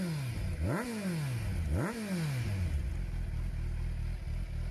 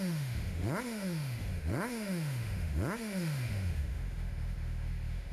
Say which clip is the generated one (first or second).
second